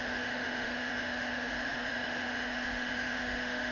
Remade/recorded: remade